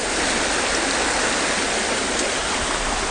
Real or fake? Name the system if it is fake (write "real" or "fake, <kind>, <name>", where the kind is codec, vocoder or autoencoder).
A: real